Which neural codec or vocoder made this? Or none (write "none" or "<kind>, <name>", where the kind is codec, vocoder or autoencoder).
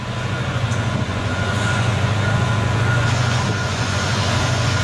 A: vocoder, Vocos